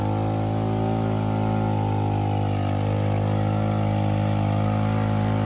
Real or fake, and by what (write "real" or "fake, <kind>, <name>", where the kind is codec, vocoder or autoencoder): real